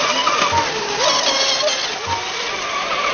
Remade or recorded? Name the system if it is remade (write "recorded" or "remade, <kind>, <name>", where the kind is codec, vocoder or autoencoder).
recorded